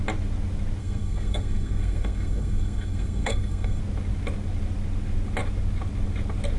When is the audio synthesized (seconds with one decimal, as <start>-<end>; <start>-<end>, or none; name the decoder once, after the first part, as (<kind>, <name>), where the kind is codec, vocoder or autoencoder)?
0.8-3.8 (codec, SNAC)